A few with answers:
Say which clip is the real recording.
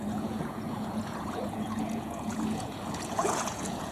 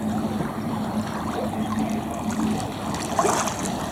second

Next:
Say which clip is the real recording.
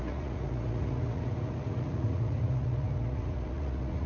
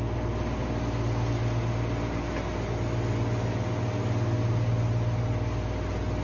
second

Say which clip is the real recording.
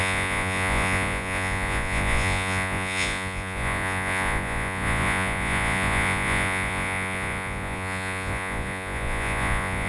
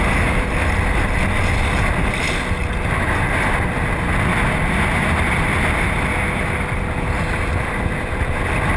second